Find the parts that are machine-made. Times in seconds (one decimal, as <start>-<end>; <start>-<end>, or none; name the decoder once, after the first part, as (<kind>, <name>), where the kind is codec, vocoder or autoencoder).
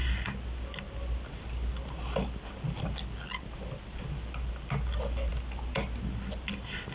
none